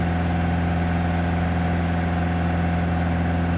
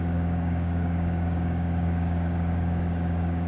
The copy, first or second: second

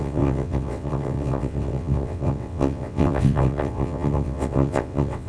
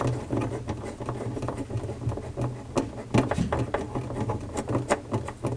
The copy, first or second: first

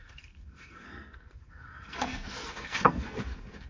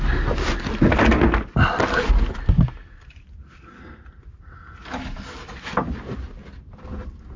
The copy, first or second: first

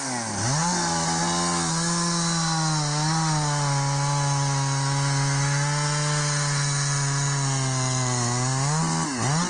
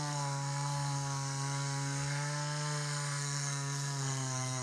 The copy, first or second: second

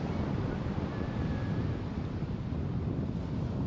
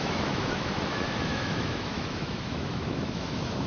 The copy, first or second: second